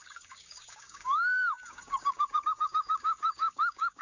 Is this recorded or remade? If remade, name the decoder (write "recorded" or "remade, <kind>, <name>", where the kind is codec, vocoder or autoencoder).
remade, codec, DAC